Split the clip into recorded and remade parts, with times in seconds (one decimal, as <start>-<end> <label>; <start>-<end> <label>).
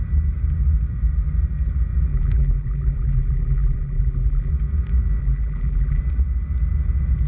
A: 0.0-2.1 recorded; 2.1-4.5 remade; 4.5-5.2 recorded; 5.2-6.0 remade; 6.0-7.3 recorded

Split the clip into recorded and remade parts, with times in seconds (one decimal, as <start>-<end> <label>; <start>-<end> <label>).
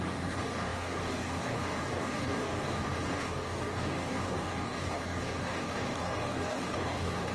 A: 0.0-7.3 remade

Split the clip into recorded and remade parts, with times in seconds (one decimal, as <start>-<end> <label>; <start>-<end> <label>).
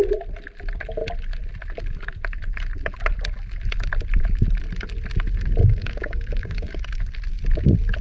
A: 0.0-5.6 recorded; 5.6-6.8 remade; 6.8-8.0 recorded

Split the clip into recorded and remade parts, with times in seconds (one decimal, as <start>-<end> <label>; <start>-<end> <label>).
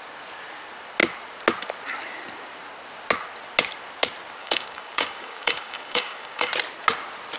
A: 0.0-4.4 recorded; 4.4-6.5 remade; 6.5-7.4 recorded